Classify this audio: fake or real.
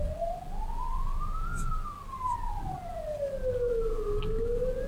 real